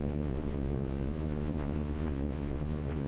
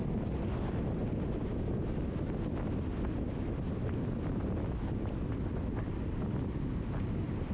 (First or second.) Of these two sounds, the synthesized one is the first